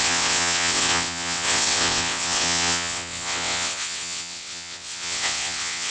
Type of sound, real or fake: fake